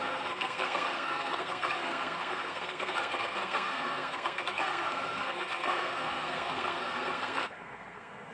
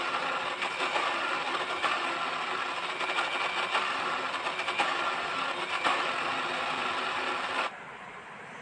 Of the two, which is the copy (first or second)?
first